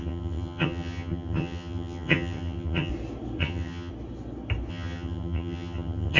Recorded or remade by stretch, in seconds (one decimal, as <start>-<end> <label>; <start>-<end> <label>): 0.0-2.9 remade; 2.9-3.4 recorded; 3.4-3.9 remade; 3.9-4.7 recorded; 4.7-6.2 remade